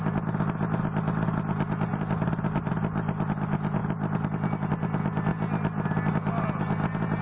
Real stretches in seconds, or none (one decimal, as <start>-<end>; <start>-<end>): 0.0-7.2